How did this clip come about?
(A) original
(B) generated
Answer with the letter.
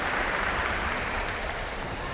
B